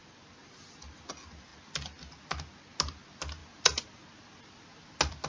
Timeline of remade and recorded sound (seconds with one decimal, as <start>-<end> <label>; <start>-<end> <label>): 0.0-5.3 recorded